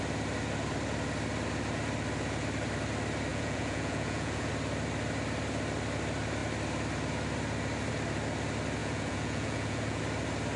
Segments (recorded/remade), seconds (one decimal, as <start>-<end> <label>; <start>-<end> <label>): 0.0-3.3 recorded; 3.3-4.5 remade; 4.5-8.8 recorded; 8.8-10.0 remade; 10.0-10.6 recorded